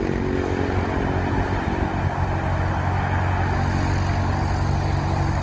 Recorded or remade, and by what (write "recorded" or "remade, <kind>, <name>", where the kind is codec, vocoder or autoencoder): recorded